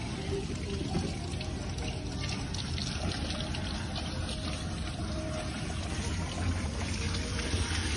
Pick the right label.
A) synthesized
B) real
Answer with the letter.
B